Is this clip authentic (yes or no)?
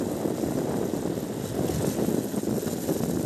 yes